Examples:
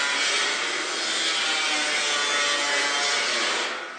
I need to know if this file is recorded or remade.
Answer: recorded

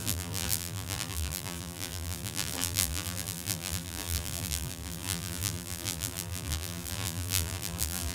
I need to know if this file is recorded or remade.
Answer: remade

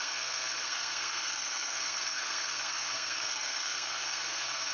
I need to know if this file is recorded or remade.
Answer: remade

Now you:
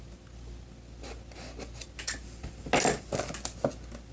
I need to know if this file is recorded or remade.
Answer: recorded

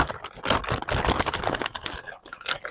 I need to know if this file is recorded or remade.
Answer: recorded